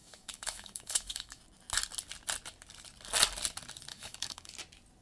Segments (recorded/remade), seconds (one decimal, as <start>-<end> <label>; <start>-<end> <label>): 0.0-1.4 remade; 1.4-3.9 recorded; 3.9-4.5 remade; 4.5-5.0 recorded